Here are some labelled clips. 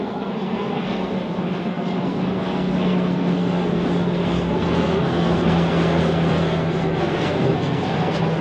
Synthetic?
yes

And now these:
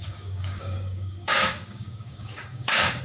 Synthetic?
yes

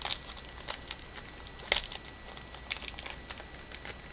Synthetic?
no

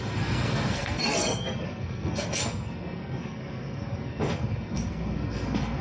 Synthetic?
yes